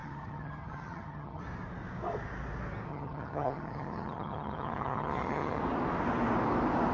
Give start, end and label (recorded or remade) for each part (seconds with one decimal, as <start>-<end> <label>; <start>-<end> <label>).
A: 0.0-1.4 remade; 1.4-2.9 recorded; 2.9-5.6 remade; 5.6-6.9 recorded